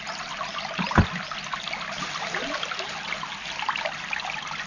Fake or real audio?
real